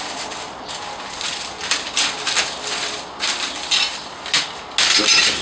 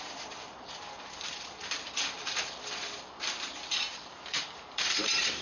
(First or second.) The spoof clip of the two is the second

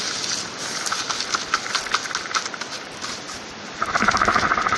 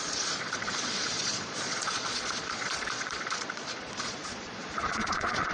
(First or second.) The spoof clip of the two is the second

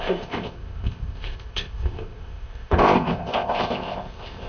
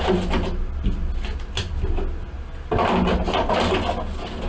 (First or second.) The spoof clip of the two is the first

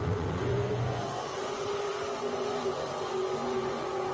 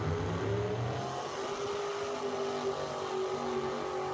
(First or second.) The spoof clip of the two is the first